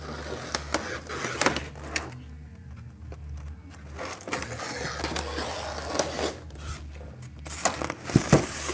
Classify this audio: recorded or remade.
recorded